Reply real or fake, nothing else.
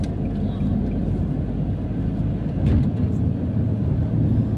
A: real